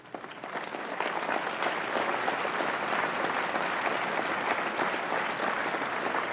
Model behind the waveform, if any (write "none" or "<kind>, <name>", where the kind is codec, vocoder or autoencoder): none